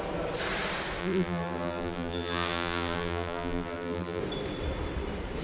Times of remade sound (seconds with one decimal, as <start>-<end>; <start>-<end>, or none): 1.0-4.2